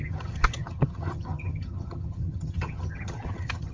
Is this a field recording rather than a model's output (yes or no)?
no